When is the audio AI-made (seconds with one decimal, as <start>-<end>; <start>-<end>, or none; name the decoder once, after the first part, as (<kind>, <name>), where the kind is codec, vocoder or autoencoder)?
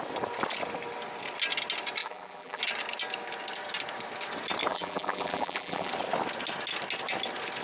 2.0-2.6 (vocoder, BigVGAN v2); 4.7-5.9